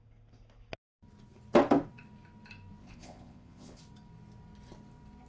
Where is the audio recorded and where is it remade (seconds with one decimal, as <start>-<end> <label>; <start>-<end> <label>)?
0.0-2.8 recorded; 2.8-3.8 remade; 3.8-5.3 recorded